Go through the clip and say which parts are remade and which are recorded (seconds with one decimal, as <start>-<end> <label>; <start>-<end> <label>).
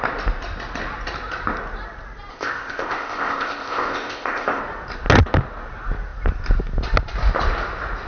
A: 0.0-2.3 recorded; 2.3-4.6 remade; 4.6-8.1 recorded